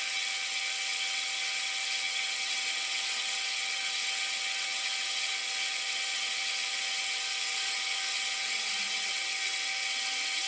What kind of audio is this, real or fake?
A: fake